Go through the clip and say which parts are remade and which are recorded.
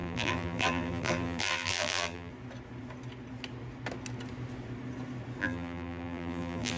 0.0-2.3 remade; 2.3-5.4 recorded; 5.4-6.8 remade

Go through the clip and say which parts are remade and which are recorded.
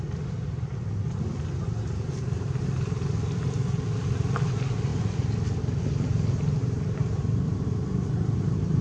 0.0-1.9 recorded; 1.9-3.1 remade; 3.1-6.6 recorded; 6.6-8.8 remade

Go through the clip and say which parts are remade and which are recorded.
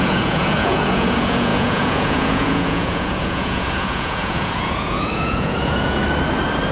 0.0-6.0 remade; 6.0-6.7 recorded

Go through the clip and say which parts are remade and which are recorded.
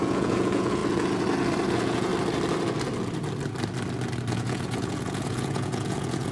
0.0-0.8 remade; 0.8-1.7 recorded; 1.7-2.1 remade; 2.1-4.3 recorded; 4.3-6.3 remade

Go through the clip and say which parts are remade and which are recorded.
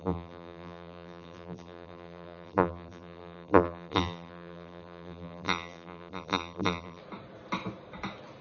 0.0-7.0 remade; 7.0-8.4 recorded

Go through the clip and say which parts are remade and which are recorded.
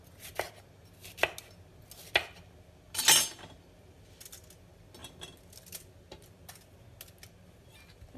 0.0-8.2 recorded